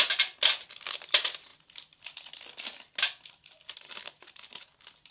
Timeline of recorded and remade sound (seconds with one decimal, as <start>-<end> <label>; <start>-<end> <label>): 0.0-5.1 recorded